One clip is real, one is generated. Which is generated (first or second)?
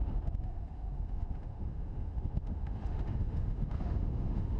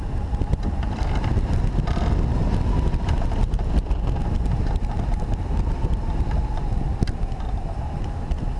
first